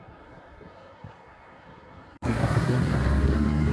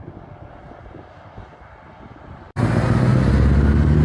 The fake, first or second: first